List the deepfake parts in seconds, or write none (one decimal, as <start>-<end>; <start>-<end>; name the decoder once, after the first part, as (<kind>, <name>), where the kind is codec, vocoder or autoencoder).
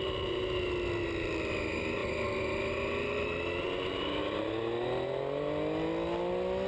none